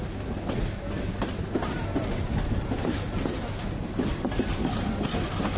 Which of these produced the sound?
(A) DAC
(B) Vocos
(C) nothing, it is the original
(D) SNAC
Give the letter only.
C